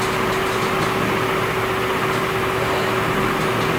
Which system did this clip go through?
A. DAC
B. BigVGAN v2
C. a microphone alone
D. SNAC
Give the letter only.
C